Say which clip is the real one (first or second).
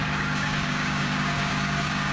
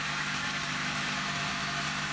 second